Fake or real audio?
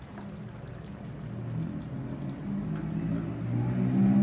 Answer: real